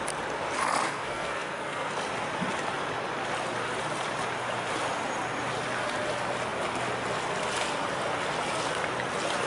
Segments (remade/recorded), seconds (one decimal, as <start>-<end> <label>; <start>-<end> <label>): 0.0-0.8 recorded; 0.8-1.9 remade; 1.9-9.5 recorded